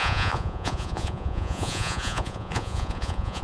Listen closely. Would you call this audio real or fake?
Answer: fake